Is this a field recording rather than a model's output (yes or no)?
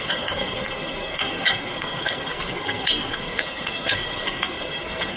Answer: no